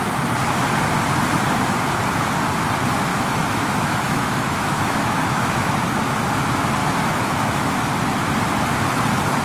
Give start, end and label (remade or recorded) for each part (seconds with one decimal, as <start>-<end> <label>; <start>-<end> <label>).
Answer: 0.0-3.1 recorded; 3.1-5.7 remade; 5.7-6.8 recorded; 6.8-7.8 remade; 7.8-9.4 recorded